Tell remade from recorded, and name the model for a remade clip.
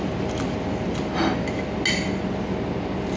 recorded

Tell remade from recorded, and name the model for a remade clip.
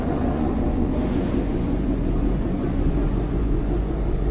remade, vocoder, Vocos